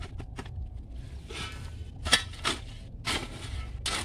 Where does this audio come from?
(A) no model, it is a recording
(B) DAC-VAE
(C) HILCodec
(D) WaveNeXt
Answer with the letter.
A